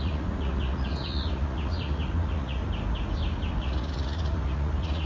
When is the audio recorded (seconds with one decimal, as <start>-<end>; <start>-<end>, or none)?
2.6-3.6